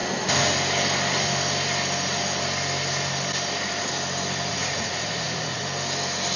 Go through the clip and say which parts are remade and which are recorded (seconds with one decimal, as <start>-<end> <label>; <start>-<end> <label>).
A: 0.0-4.5 recorded; 4.5-5.6 remade; 5.6-6.4 recorded